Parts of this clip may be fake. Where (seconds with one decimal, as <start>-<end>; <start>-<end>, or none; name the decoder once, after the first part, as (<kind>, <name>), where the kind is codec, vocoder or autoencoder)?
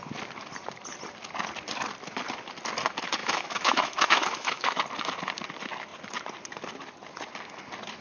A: 3.2-4.8 (autoencoder, DAC-VAE)